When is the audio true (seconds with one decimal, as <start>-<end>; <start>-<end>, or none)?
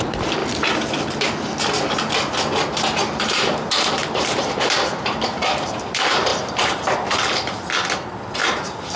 0.4-3.2; 7.8-9.0